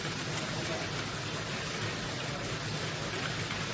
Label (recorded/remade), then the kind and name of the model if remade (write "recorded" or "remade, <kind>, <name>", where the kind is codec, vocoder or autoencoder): recorded